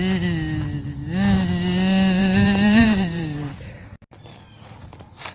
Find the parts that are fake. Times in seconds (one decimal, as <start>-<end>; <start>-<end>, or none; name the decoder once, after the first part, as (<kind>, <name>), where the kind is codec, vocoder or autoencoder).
2.2-4.3 (vocoder, BigVGAN v2)